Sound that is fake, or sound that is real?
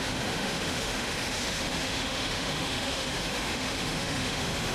fake